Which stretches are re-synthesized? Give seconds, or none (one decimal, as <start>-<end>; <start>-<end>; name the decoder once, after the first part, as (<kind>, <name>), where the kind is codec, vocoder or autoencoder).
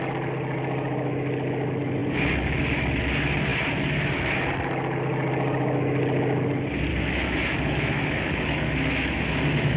6.9-9.8 (autoencoder, DAC-VAE)